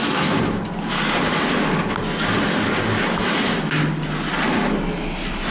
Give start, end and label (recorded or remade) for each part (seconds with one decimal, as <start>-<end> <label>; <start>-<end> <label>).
0.0-0.9 remade; 0.9-5.5 recorded